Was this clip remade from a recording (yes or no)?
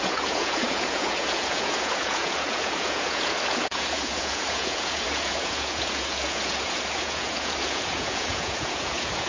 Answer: yes